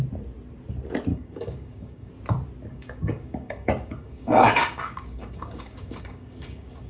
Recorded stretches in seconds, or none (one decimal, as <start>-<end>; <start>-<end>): 0.0-1.1; 2.1-2.7